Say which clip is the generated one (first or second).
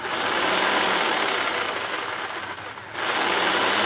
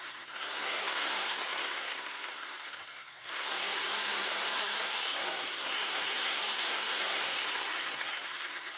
second